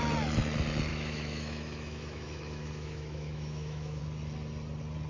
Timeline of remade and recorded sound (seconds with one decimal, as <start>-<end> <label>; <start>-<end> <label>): 0.0-0.9 recorded; 0.9-4.0 remade; 4.0-5.1 recorded